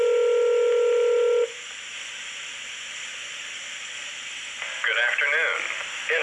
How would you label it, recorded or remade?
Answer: recorded